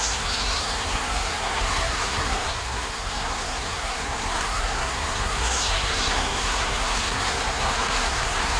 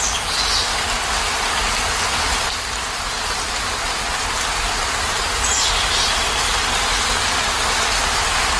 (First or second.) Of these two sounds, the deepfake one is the first